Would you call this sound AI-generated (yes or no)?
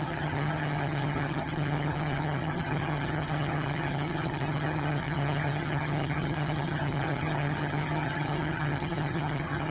yes